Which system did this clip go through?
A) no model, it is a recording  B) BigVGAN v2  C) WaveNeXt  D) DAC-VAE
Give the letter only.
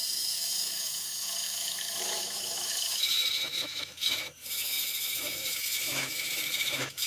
D